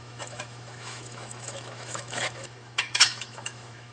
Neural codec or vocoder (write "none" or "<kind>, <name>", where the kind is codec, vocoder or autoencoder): autoencoder, DAC-VAE